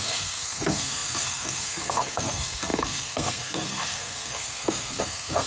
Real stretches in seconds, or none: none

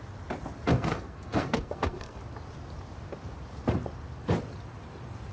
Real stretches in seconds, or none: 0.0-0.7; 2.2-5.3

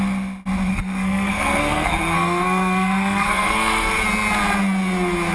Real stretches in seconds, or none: 0.0-0.7; 3.9-5.3

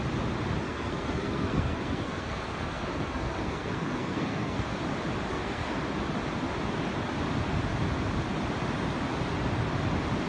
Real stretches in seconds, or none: 0.0-0.6; 4.8-5.3; 5.8-10.3

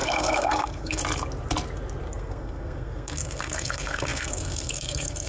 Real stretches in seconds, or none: 1.0-2.1

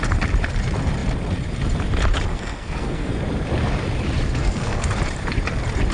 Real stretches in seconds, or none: 0.0-2.3; 3.1-4.4; 4.9-5.9

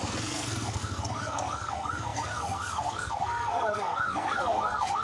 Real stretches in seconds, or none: none

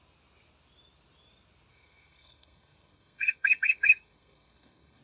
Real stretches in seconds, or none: 0.0-1.7